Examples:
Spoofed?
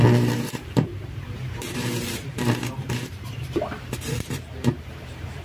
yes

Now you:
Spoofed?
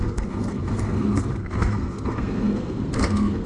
yes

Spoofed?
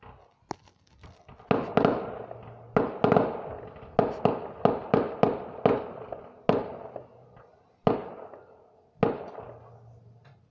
no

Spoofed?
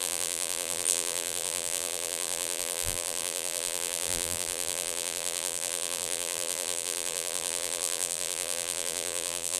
yes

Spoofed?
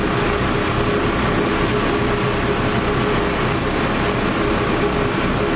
no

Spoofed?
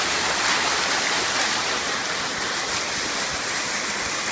no